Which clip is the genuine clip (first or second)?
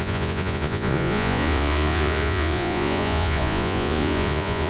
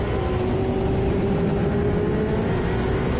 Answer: second